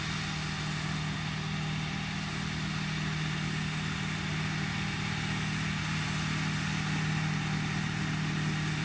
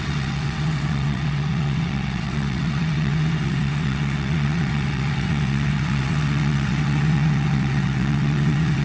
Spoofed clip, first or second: second